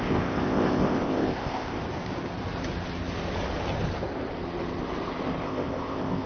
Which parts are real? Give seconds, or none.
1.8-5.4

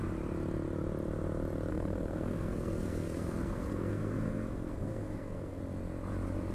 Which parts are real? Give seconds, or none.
0.0-1.7; 5.6-6.5

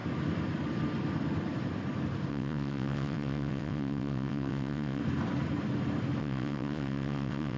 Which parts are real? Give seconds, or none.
0.0-2.3; 5.0-6.2

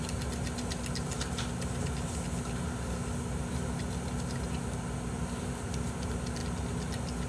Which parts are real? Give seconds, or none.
0.0-7.3

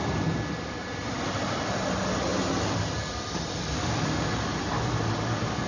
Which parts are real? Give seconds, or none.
0.0-5.7